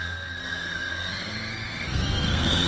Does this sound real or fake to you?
fake